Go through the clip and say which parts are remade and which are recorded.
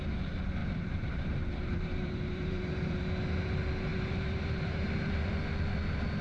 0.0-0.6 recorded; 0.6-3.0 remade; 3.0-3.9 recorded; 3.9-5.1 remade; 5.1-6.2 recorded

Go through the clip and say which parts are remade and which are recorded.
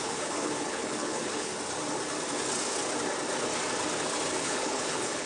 0.0-1.5 remade; 1.5-4.4 recorded; 4.4-5.3 remade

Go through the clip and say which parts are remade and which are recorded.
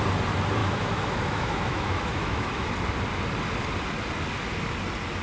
0.0-0.6 recorded; 0.6-2.7 remade; 2.7-5.2 recorded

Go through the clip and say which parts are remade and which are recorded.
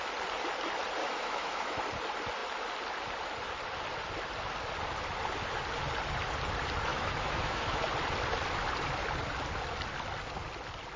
0.0-1.0 recorded; 1.0-1.8 remade; 1.8-6.9 recorded; 6.9-7.8 remade; 7.8-11.0 recorded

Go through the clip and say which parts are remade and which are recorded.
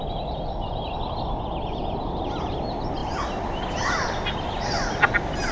0.0-3.0 recorded; 3.0-3.6 remade; 3.6-5.5 recorded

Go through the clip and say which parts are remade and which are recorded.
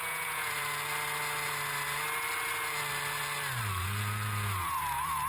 0.0-0.6 remade; 0.6-3.8 recorded; 3.8-5.3 remade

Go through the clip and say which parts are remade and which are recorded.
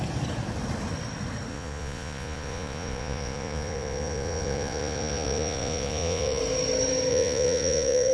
0.0-1.5 recorded; 1.5-6.4 remade; 6.4-7.1 recorded; 7.1-8.1 remade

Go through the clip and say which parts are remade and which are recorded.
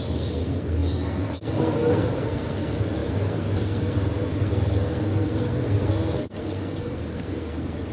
0.0-7.9 remade